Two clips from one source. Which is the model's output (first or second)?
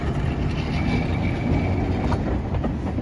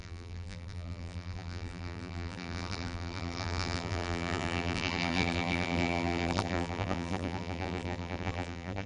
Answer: second